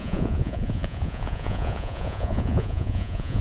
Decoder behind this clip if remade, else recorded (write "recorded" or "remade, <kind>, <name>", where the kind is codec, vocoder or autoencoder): remade, vocoder, Vocos